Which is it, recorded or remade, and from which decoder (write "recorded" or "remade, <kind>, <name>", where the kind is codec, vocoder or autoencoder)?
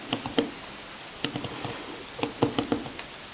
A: recorded